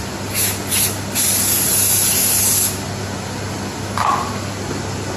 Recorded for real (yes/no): yes